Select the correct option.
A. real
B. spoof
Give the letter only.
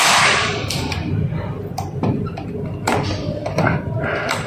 B